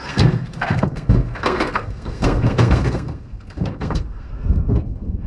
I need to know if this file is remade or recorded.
remade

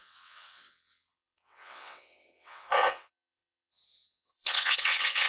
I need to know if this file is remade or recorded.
remade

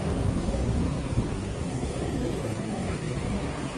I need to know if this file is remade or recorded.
remade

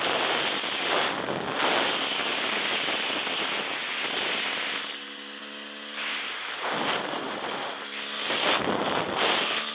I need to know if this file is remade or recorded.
recorded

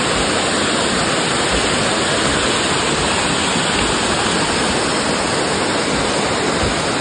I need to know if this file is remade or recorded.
recorded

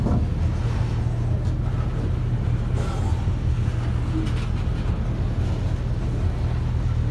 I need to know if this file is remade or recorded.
recorded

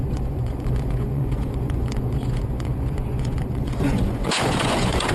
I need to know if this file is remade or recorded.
remade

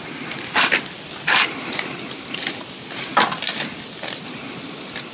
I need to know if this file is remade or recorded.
recorded